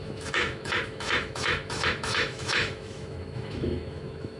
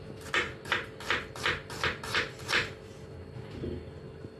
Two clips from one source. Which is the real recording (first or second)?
second